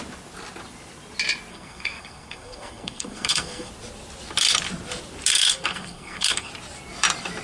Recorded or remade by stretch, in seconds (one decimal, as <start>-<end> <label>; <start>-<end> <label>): 0.0-1.5 recorded; 1.5-3.7 remade; 3.7-5.3 recorded; 5.3-6.5 remade; 6.5-7.4 recorded

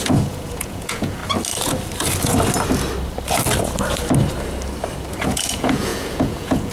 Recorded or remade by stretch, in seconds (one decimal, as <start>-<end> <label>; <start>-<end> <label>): 0.0-1.2 remade; 1.2-5.2 recorded; 5.2-6.7 remade

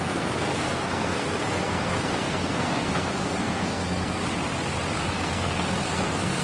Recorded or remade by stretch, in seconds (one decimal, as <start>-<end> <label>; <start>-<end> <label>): 0.0-4.2 remade; 4.2-5.0 recorded; 5.0-6.4 remade